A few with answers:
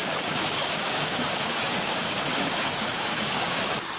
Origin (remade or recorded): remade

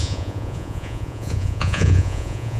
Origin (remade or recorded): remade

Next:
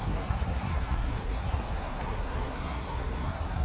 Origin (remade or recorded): remade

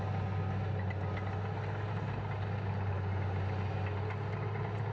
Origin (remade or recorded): recorded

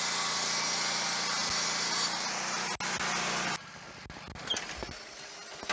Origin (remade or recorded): recorded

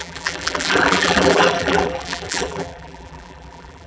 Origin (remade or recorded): remade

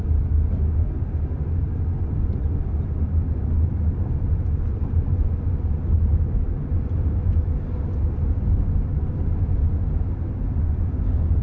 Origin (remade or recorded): recorded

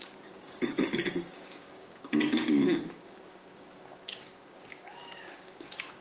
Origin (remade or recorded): remade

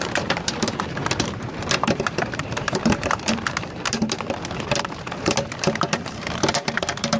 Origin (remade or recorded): remade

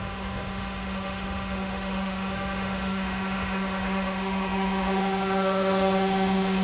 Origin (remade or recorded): remade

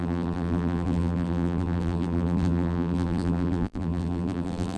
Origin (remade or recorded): remade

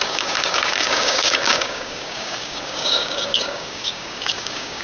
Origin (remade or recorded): remade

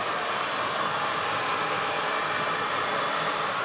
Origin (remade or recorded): recorded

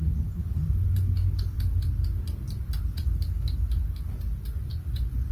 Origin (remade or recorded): recorded